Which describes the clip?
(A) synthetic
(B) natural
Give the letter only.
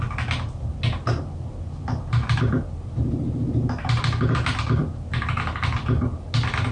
B